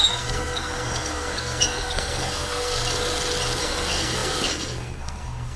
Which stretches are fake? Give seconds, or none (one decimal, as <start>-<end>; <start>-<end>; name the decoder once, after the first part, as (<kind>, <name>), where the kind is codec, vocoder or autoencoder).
0.0-2.8 (codec, SNAC); 3.6-5.6